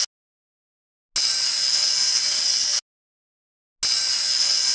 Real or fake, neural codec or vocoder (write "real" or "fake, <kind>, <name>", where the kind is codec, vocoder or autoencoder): real